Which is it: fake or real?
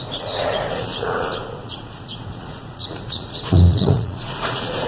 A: fake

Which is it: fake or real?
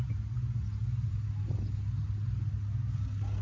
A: real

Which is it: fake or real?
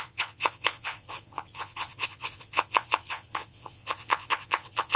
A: fake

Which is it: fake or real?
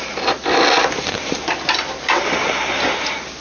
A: real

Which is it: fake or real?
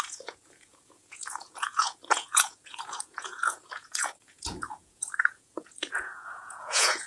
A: fake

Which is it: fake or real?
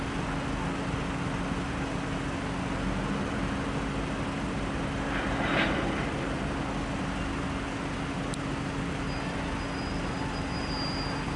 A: real